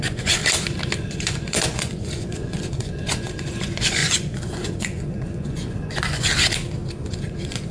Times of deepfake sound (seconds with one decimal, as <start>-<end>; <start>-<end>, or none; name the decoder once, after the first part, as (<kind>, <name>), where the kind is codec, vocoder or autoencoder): 0.0-0.4 (vocoder, Vocos); 1.0-6.3; 7.1-7.7